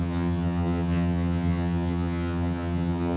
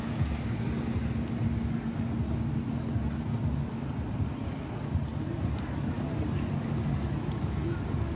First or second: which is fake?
first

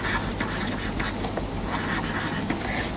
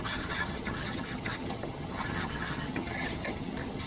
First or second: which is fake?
second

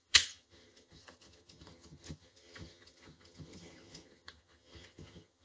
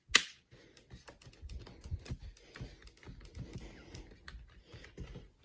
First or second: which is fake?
first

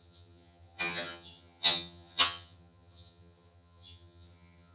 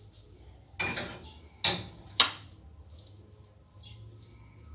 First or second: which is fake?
first